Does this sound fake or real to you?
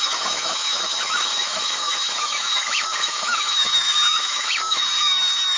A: fake